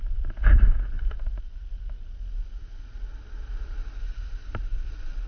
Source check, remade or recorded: recorded